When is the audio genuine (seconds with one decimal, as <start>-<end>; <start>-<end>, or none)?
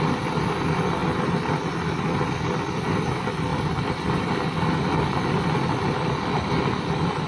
0.0-3.5; 4.3-7.3